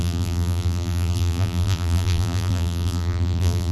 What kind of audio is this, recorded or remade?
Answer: remade